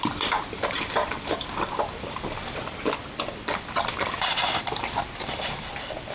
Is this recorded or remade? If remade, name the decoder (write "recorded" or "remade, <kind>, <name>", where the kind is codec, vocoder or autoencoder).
remade, vocoder, BigVGAN v2